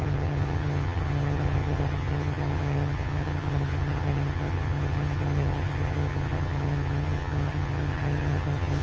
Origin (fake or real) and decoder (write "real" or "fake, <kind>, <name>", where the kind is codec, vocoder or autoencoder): fake, vocoder, HiFi-GAN